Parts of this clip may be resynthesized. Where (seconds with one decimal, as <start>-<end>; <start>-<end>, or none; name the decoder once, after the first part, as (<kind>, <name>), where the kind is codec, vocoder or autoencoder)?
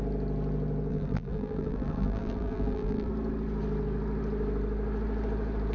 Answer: 0.9-3.1 (vocoder, BigVGAN v2)